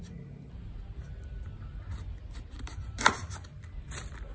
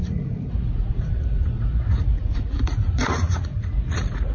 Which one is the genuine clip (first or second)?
first